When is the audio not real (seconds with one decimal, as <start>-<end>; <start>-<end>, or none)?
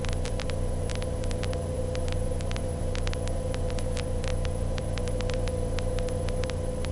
0.0-6.9